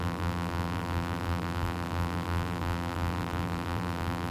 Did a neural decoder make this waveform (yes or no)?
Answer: yes